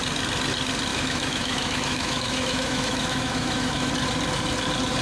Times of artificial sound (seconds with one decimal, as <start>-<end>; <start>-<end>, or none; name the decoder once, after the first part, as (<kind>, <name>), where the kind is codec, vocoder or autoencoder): 0.9-3.9 (autoencoder, DAC-VAE)